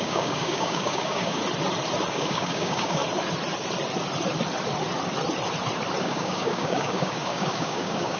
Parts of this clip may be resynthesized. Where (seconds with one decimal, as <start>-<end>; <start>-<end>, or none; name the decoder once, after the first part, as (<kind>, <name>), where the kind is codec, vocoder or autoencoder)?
0.0-1.4 (codec, DAC); 2.1-3.0; 6.0-8.2